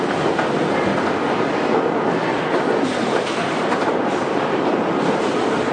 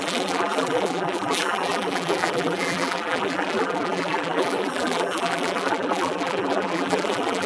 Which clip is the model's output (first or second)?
second